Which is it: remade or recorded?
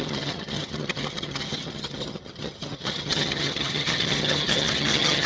remade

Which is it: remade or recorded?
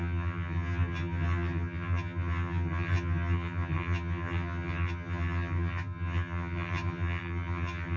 remade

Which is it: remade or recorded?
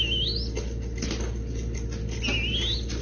recorded